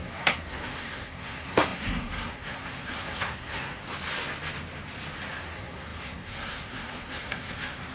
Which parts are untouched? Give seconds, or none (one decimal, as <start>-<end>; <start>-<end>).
3.8-5.4